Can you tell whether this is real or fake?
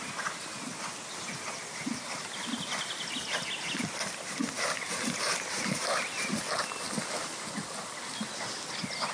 real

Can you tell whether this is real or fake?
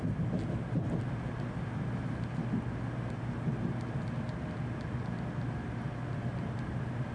real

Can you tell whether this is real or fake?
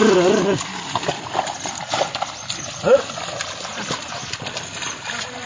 real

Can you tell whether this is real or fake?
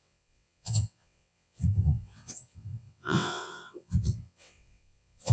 fake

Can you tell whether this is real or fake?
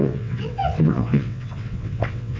fake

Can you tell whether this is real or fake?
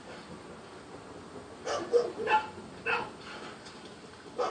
real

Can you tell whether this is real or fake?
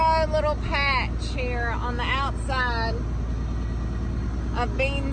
real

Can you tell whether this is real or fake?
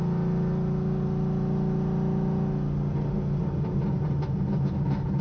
real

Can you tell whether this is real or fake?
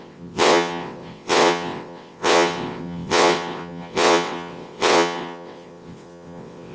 fake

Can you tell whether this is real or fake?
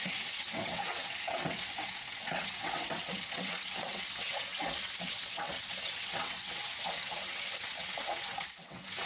fake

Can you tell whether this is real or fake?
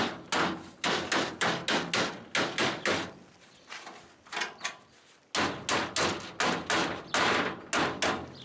real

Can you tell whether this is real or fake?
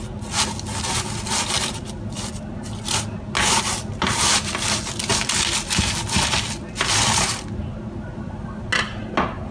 real